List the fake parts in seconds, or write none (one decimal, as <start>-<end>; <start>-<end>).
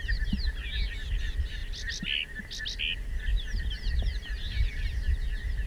3.3-5.1